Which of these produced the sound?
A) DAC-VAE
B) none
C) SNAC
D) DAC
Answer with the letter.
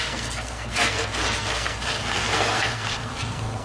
C